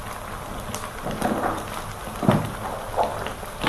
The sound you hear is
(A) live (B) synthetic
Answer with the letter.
A